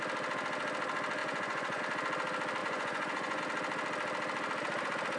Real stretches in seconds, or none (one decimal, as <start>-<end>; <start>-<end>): 0.0-1.2; 1.8-2.6; 3.4-5.2

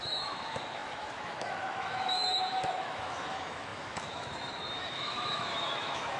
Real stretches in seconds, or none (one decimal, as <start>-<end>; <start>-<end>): none

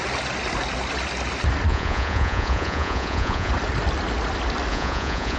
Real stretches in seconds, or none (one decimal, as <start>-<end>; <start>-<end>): 0.0-1.7; 3.5-4.7

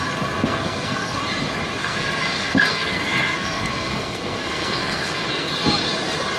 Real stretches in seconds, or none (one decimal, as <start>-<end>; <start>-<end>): 0.0-0.4; 1.2-1.8; 5.5-6.4

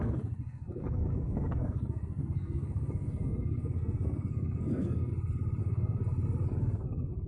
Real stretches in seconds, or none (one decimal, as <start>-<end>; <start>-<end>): 5.1-5.6; 6.0-6.6